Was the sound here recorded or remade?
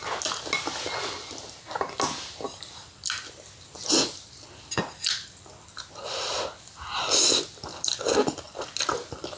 recorded